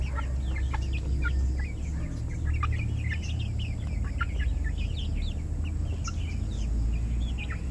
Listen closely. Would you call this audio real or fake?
real